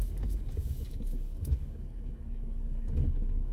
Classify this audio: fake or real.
fake